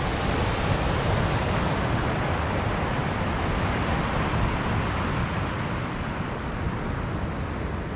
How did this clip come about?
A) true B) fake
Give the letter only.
A